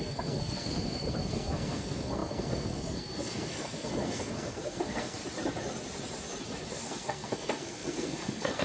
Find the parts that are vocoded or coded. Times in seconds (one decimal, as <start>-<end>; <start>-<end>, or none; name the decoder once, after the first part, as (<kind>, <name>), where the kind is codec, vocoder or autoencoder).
0.0-5.2 (codec, SNAC); 6.7-8.6